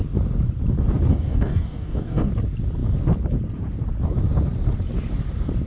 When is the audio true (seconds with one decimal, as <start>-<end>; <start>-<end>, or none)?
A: 0.0-1.1; 2.3-5.7